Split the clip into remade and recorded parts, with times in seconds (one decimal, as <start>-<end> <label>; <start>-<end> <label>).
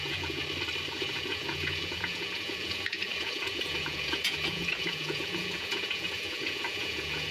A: 0.0-0.4 remade; 0.4-0.9 recorded; 0.9-7.3 remade